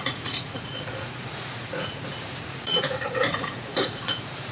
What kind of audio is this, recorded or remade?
remade